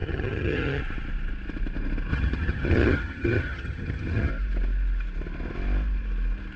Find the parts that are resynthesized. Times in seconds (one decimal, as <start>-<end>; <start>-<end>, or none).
0.0-0.8; 2.1-4.3